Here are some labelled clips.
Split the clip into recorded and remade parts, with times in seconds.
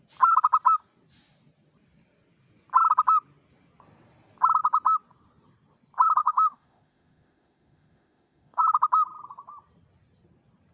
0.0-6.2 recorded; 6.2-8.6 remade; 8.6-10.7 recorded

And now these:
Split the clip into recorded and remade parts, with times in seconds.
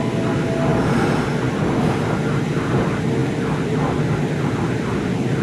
0.0-5.4 recorded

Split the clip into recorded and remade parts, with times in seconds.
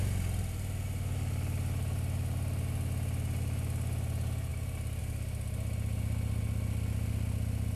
0.0-7.8 recorded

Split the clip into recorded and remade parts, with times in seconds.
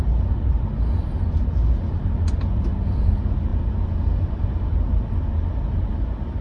0.0-6.4 recorded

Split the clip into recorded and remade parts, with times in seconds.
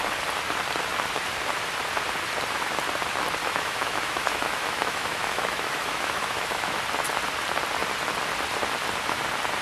0.0-3.4 recorded; 3.4-6.8 remade; 6.8-9.6 recorded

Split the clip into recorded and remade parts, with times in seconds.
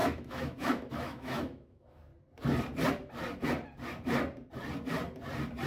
0.0-2.1 remade; 2.1-5.7 recorded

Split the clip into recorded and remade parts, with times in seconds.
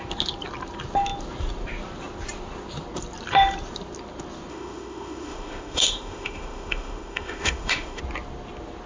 0.0-4.5 recorded; 4.5-8.0 remade; 8.0-8.9 recorded